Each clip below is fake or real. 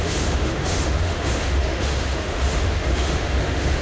fake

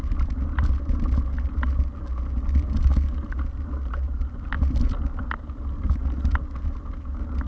real